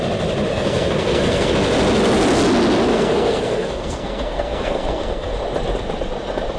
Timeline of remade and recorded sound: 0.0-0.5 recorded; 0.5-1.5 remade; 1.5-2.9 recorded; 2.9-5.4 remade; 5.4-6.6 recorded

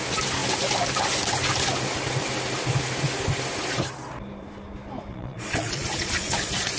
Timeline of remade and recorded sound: 0.0-5.1 recorded; 5.1-6.8 remade

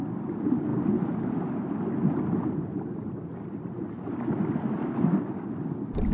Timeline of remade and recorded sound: 0.0-6.1 recorded

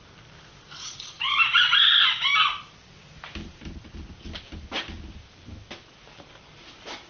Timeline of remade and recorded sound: 0.0-7.1 recorded

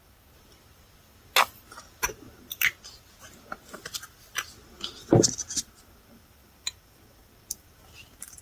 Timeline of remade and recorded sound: 0.0-8.4 recorded